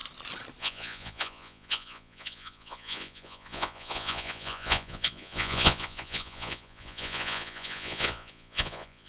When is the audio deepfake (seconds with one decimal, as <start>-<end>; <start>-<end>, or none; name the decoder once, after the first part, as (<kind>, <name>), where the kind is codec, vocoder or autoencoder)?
0.6-9.1 (vocoder, Vocos)